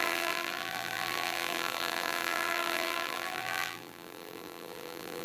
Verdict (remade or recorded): remade